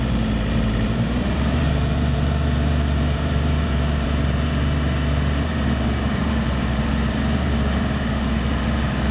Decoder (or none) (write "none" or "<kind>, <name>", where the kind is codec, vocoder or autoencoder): vocoder, BigVGAN v2